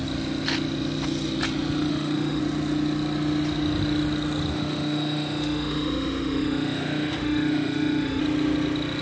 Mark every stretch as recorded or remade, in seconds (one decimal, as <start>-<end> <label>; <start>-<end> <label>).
0.0-1.9 recorded; 1.9-2.4 remade; 2.4-4.5 recorded; 4.5-8.2 remade; 8.2-9.0 recorded